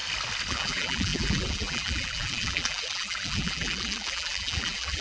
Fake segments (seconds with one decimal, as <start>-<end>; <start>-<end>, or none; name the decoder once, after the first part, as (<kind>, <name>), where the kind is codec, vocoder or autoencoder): 0.5-5.0 (vocoder, BigVGAN v2)